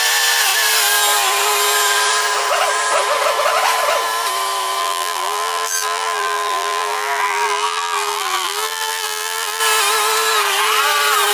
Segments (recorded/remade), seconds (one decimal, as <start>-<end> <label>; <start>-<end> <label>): 0.0-4.8 recorded; 4.8-9.6 remade; 9.6-11.3 recorded